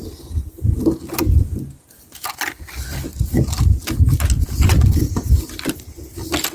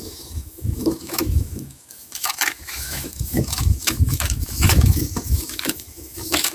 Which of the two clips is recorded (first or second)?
first